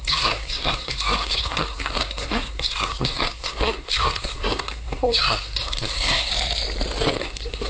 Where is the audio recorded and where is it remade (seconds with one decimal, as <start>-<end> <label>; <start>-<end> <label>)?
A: 0.0-6.3 remade; 6.3-7.2 recorded; 7.2-7.7 remade